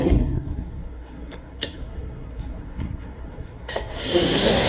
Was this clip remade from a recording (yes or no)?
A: yes